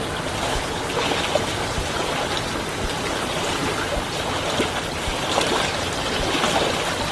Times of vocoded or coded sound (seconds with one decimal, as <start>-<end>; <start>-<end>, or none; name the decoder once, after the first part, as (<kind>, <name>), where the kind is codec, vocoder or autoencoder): 0.5-1.2 (codec, HILCodec)